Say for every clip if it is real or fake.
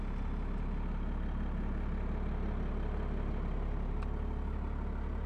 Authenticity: real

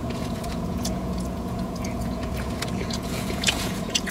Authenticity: fake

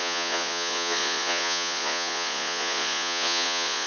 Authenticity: fake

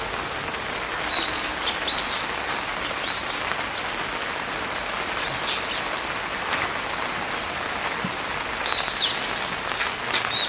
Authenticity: real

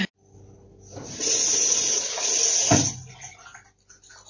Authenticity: real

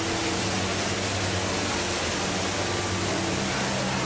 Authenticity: real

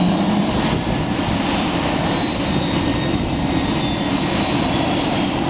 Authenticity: real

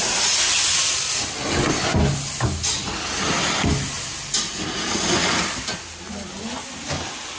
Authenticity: real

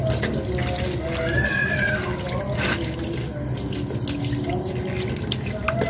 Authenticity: real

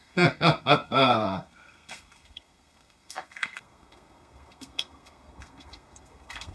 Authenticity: fake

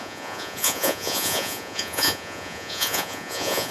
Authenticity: fake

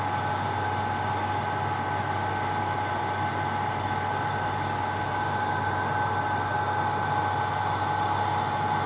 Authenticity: real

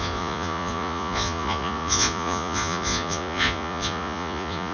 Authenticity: fake